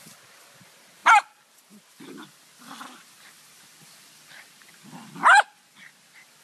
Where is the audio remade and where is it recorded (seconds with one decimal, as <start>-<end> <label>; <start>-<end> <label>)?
0.0-6.4 recorded

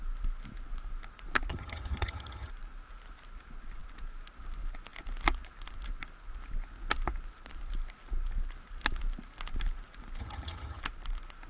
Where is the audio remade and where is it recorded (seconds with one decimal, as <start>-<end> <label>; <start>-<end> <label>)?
0.0-1.5 recorded; 1.5-2.5 remade; 2.5-10.2 recorded; 10.2-10.8 remade; 10.8-11.5 recorded

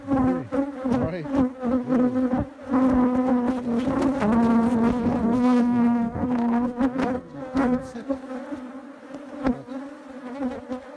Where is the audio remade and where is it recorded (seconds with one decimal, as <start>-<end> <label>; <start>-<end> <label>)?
0.0-5.2 recorded; 5.2-8.3 remade; 8.3-11.0 recorded

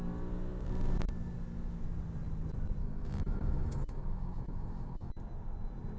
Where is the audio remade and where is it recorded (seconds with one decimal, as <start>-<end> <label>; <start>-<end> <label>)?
0.0-2.8 recorded; 2.8-5.1 remade; 5.1-6.0 recorded

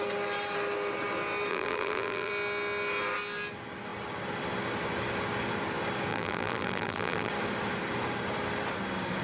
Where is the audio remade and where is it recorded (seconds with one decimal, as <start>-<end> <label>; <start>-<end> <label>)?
0.0-1.5 recorded; 1.5-2.3 remade; 2.3-6.1 recorded; 6.1-7.3 remade; 7.3-9.2 recorded

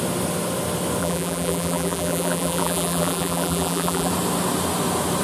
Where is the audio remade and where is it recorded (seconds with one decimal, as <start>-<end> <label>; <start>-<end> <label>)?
0.0-1.0 recorded; 1.0-4.1 remade; 4.1-5.2 recorded

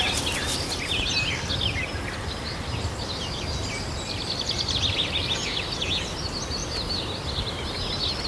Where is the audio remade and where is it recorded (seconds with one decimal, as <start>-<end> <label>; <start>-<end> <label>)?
0.0-8.3 recorded

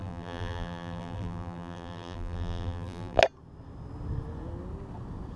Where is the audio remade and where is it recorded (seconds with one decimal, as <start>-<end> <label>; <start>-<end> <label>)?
0.0-3.2 remade; 3.2-5.4 recorded